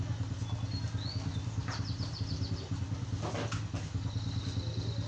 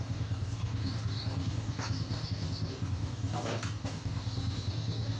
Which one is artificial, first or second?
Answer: second